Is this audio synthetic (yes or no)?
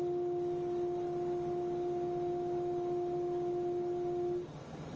no